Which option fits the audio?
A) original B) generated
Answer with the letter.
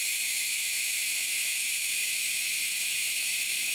B